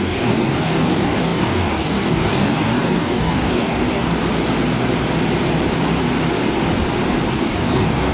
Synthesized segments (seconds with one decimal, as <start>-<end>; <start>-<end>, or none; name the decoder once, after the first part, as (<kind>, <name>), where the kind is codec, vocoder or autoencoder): 0.0-4.1 (codec, DAC); 7.3-8.1